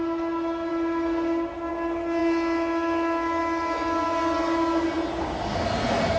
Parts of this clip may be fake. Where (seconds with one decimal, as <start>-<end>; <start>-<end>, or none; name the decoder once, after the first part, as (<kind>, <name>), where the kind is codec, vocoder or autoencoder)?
none